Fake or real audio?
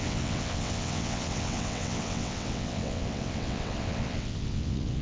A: fake